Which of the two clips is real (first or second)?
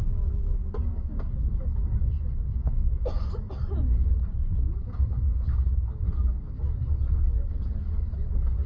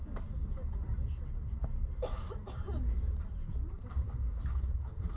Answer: first